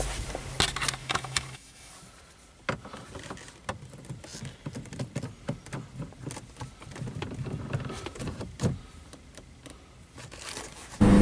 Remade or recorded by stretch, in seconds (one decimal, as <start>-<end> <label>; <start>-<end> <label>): 0.0-1.0 recorded; 1.0-1.9 remade; 1.9-11.2 recorded